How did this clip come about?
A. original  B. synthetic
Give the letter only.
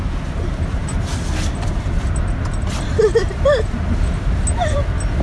A